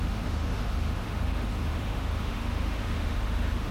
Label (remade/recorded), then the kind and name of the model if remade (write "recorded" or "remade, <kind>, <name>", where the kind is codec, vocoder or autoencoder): remade, autoencoder, DAC-VAE